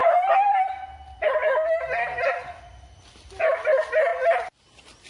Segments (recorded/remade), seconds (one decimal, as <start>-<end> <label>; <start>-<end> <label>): 0.0-5.1 recorded